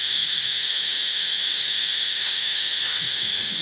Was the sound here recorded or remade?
remade